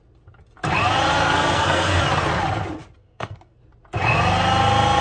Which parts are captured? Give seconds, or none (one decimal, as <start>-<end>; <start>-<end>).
0.0-1.2; 2.0-3.0; 3.6-5.0

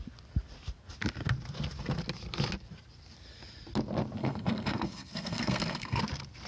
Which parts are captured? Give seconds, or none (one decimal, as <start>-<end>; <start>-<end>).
0.0-4.2; 6.0-6.5

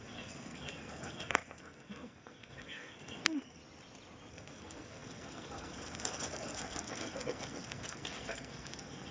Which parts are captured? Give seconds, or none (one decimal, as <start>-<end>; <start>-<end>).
3.6-4.3

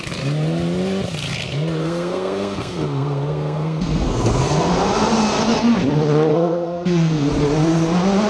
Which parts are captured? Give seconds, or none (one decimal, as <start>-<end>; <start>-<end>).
0.0-1.8; 4.7-6.3; 7.3-8.3

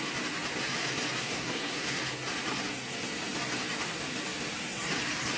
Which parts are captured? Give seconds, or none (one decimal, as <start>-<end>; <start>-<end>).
0.0-1.2; 2.0-5.4